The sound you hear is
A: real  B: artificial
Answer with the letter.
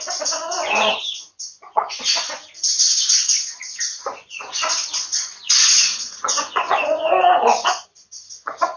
B